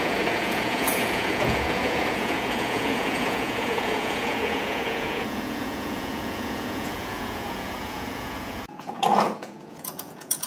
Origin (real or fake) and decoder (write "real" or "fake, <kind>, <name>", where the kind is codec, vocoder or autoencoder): fake, vocoder, Vocos